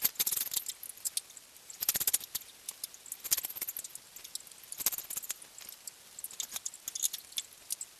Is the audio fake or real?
real